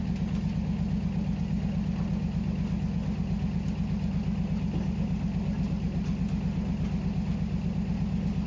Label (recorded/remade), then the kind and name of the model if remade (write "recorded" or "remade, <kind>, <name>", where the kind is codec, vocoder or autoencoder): recorded